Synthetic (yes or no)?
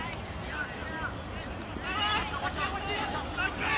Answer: no